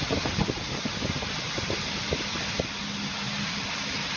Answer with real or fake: real